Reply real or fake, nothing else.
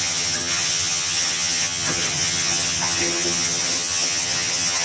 fake